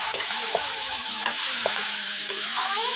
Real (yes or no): no